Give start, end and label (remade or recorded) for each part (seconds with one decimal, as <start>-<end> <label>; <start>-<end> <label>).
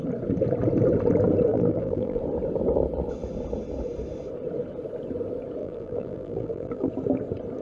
0.0-1.5 recorded; 1.5-2.2 remade; 2.2-5.6 recorded; 5.6-6.9 remade; 6.9-7.6 recorded